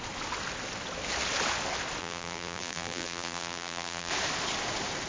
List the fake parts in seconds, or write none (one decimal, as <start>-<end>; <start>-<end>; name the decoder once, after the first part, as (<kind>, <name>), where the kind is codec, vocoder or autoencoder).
2.0-4.1 (vocoder, BigVGAN v2)